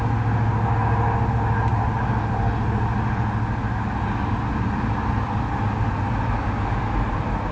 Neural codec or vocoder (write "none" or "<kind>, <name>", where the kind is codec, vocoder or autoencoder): none